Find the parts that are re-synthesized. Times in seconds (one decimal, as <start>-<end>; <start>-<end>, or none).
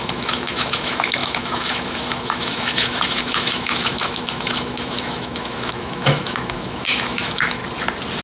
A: 0.0-7.6